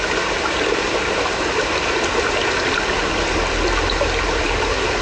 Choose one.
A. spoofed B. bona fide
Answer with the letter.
A